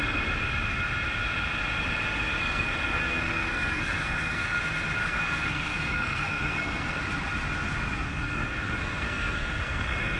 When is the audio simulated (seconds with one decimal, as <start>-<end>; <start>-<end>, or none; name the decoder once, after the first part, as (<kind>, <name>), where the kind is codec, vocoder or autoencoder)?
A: 2.4-4.6 (codec, SNAC); 5.0-7.0; 8.1-10.2